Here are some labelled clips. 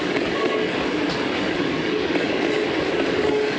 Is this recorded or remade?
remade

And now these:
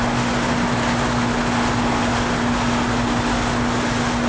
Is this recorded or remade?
recorded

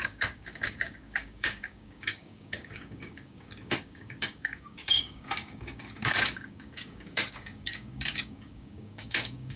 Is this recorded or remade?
remade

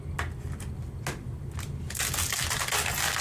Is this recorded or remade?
recorded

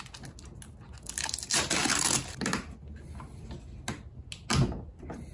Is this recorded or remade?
recorded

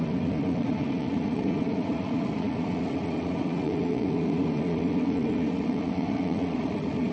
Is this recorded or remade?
remade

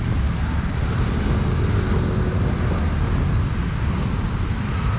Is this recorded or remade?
recorded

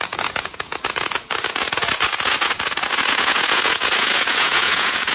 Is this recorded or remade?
remade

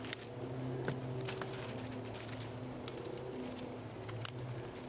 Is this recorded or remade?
recorded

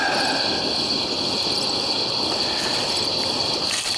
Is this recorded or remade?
recorded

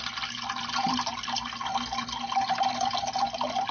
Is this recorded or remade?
recorded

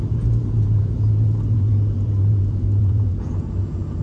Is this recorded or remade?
remade